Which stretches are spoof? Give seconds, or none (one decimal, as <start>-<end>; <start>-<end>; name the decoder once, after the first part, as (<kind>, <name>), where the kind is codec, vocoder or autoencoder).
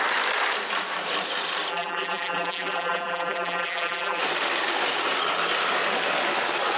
1.7-4.2 (vocoder, BigVGAN v2)